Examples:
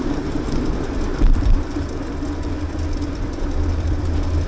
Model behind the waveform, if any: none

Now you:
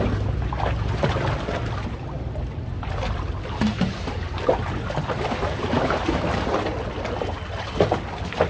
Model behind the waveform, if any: none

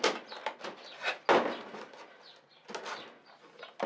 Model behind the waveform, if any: none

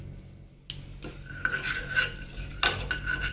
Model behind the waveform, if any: none